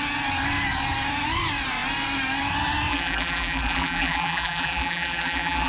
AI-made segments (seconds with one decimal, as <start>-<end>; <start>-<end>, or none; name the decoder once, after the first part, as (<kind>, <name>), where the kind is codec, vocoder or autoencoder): 2.9-5.7 (vocoder, BigVGAN v2)